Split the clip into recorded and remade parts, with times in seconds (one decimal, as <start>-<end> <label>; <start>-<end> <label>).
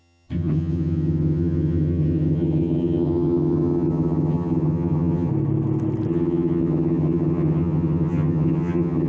0.0-5.3 remade; 5.3-6.1 recorded; 6.1-9.1 remade